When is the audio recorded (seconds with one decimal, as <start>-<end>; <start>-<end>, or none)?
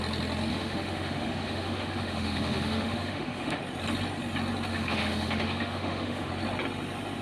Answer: 0.0-0.5; 3.6-4.7; 6.3-7.2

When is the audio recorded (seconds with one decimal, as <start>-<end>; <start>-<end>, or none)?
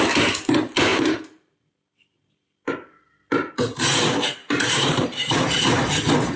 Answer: 0.0-0.9; 2.7-4.4; 5.6-6.4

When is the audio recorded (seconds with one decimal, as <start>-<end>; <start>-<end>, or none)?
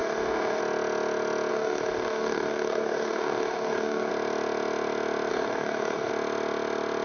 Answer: 0.6-1.5; 4.1-5.3; 6.1-7.0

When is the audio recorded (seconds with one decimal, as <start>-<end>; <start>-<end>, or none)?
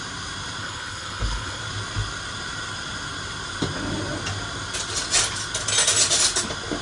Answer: 0.0-0.6; 1.6-6.8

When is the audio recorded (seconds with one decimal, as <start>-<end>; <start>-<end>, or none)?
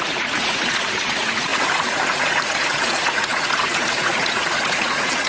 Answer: none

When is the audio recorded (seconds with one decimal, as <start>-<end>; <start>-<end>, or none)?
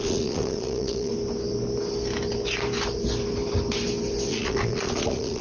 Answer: 1.1-4.3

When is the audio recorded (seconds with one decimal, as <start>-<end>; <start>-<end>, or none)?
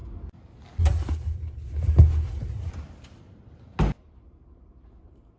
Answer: 0.0-5.4